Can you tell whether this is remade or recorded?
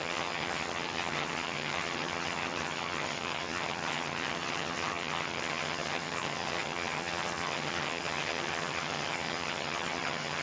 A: remade